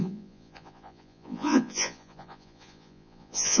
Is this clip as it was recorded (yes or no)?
no